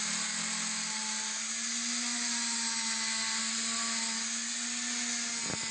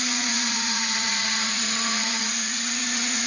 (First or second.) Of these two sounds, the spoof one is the second